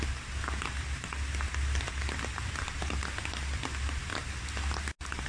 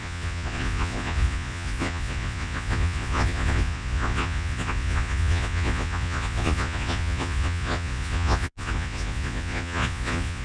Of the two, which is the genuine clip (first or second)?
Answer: first